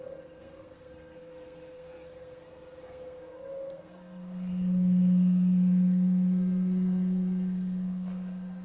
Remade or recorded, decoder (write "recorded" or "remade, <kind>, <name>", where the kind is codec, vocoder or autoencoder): remade, codec, SNAC